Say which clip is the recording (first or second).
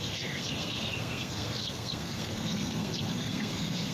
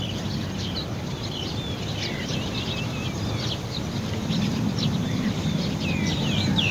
second